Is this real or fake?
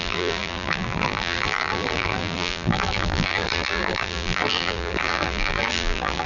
fake